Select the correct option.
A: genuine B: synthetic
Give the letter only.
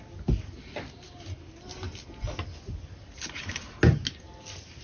A